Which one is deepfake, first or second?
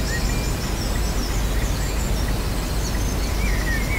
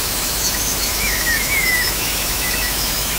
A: second